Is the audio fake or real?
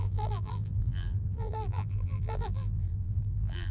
fake